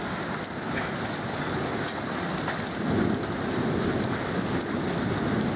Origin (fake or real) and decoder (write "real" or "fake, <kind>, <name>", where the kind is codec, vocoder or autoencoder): real